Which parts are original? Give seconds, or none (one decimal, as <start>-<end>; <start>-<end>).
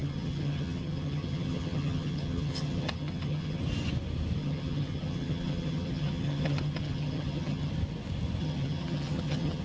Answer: 3.6-4.4; 7.7-8.4